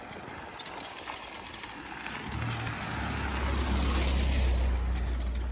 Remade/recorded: recorded